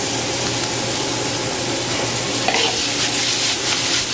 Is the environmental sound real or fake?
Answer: real